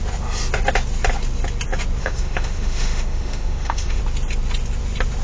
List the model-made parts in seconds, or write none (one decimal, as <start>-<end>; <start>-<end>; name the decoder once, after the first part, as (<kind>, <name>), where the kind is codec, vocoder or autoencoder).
2.0-4.0 (autoencoder, DAC-VAE)